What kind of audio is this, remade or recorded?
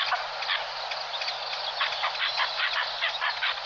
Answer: recorded